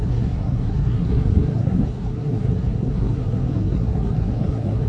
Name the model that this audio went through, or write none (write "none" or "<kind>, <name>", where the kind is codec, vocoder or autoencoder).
codec, SNAC